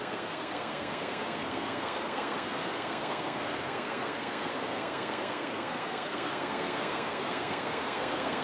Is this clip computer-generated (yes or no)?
yes